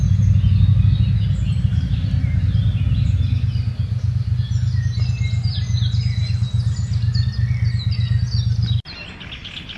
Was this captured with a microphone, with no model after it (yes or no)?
yes